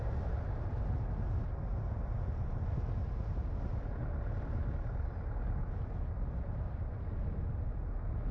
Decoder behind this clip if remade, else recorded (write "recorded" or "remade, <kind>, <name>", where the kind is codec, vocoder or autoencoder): recorded